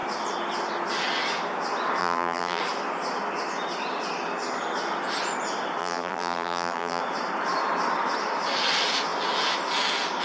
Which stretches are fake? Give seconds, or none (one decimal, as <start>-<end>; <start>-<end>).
2.0-2.6; 5.8-7.0